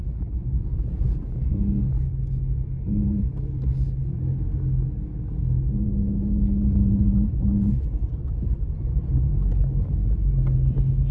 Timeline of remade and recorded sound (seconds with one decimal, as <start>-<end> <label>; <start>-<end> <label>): 0.0-1.4 recorded; 1.4-1.9 remade; 1.9-11.1 recorded